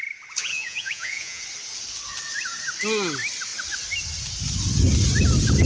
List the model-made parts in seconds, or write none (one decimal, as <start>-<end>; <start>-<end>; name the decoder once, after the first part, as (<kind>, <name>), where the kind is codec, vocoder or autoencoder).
0.4-1.4 (vocoder, Vocos)